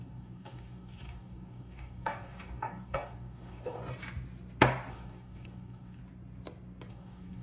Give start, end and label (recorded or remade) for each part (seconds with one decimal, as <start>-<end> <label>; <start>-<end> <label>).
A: 0.0-3.8 remade; 3.8-4.9 recorded; 4.9-6.0 remade; 6.0-6.9 recorded; 6.9-7.4 remade